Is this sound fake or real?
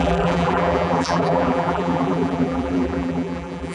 fake